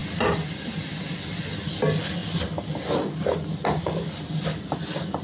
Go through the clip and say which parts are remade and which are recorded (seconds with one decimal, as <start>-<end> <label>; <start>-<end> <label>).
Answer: 0.0-5.2 recorded